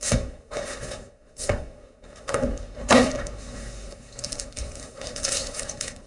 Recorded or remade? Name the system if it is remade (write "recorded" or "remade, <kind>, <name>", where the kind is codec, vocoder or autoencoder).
remade, codec, SNAC